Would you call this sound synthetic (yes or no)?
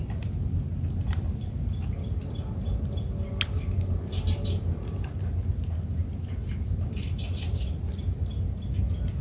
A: no